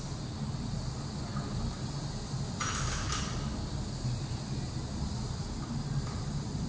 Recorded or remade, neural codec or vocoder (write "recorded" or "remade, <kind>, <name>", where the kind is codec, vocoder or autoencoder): recorded